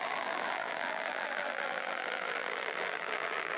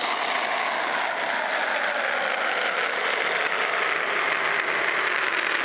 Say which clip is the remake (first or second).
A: first